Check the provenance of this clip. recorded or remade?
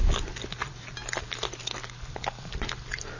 recorded